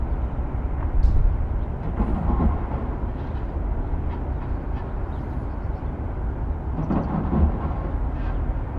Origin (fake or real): real